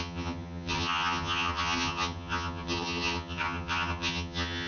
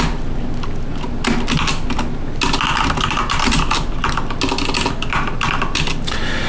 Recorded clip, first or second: second